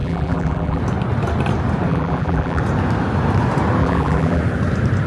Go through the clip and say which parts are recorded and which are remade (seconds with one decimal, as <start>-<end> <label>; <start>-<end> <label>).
0.0-0.8 remade; 0.8-1.9 recorded; 1.9-2.6 remade; 2.6-3.8 recorded; 3.8-4.4 remade; 4.4-5.1 recorded